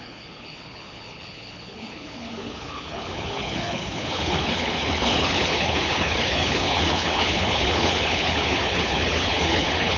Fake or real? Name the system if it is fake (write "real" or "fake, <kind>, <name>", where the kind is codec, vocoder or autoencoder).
fake, codec, HILCodec